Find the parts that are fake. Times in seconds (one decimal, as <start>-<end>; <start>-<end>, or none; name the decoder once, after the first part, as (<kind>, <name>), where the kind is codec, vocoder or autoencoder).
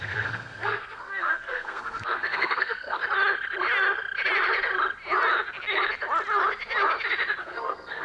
0.0-3.0 (codec, SNAC); 7.4-8.0